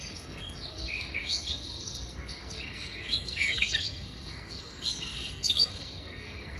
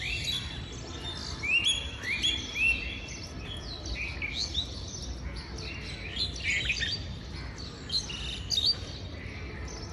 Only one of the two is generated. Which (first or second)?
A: first